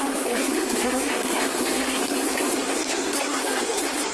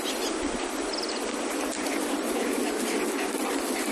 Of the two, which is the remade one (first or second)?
first